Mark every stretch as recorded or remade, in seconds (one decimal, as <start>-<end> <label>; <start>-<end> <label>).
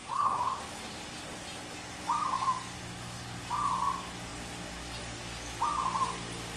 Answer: 0.0-0.6 remade; 0.6-6.6 recorded